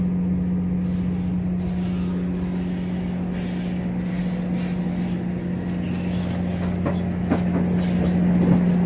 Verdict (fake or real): real